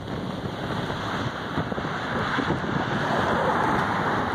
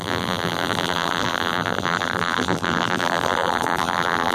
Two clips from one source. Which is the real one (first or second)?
first